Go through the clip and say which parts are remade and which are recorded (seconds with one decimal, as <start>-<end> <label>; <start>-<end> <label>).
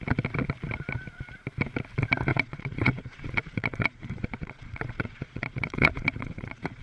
0.0-2.3 recorded; 2.3-6.8 remade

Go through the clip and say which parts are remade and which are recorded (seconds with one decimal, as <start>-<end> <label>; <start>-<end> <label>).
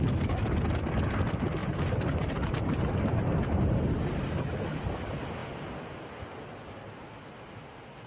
0.0-1.6 recorded; 1.6-4.3 remade; 4.3-8.1 recorded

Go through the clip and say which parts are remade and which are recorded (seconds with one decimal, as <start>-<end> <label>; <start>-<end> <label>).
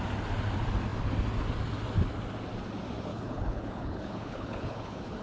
0.0-3.1 recorded; 3.1-5.2 remade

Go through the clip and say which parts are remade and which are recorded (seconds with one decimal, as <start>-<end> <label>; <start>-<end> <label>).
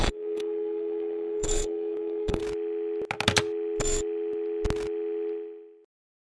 0.0-2.4 remade; 2.4-6.0 recorded; 6.0-6.4 remade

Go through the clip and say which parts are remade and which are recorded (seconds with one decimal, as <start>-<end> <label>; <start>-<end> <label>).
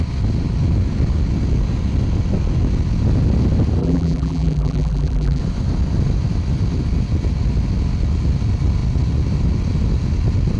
0.0-3.8 recorded; 3.8-5.4 remade; 5.4-10.6 recorded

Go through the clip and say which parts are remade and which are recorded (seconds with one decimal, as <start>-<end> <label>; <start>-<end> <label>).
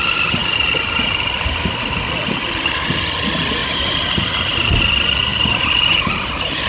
0.0-3.6 recorded; 3.6-4.8 remade; 4.8-5.3 recorded; 5.3-6.7 remade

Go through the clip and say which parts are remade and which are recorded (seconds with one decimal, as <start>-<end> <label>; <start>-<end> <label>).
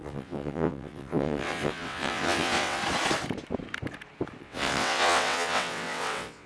0.0-2.8 remade; 2.8-4.4 recorded; 4.4-6.5 remade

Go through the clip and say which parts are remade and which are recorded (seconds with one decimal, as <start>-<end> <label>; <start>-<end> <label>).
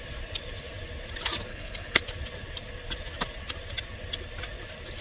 0.0-1.5 recorded; 1.5-2.0 remade; 2.0-5.0 recorded